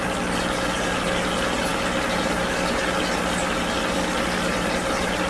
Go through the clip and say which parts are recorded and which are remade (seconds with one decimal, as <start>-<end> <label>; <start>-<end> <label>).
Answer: 0.0-5.3 recorded